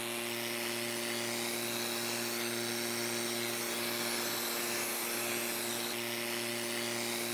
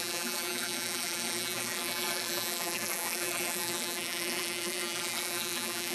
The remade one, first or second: second